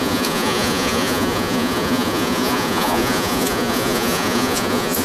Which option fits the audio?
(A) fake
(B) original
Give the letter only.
A